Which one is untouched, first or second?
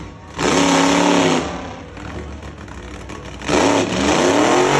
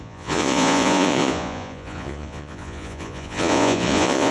first